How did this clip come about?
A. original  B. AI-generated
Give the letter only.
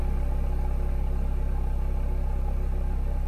A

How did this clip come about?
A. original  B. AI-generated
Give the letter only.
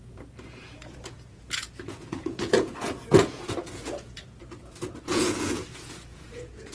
B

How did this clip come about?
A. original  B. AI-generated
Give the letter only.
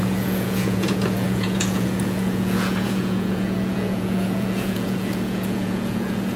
B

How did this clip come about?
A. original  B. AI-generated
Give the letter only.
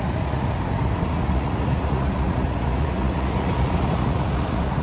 B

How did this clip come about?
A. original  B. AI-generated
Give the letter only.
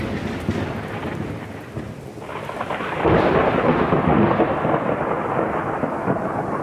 A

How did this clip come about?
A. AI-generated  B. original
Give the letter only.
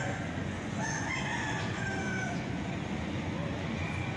A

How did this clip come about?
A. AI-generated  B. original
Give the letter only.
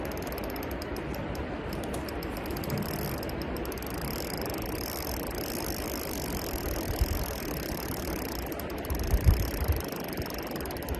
B